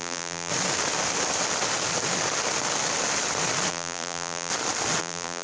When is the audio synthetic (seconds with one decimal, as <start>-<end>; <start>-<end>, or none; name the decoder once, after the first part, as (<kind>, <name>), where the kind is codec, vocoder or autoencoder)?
0.0-0.5 (vocoder, BigVGAN v2); 3.7-4.5; 5.0-5.4